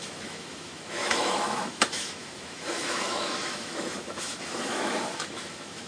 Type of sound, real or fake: fake